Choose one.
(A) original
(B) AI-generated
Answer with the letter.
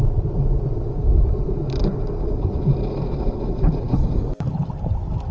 A